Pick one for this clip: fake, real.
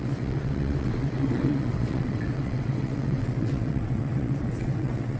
fake